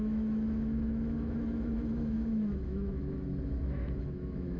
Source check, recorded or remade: remade